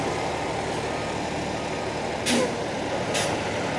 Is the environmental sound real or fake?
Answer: real